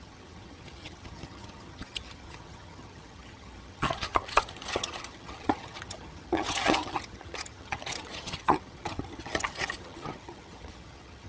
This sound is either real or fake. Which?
fake